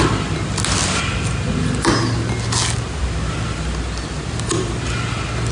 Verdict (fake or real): real